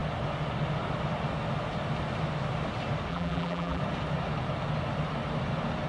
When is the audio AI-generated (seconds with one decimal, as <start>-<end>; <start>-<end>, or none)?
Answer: 3.1-3.8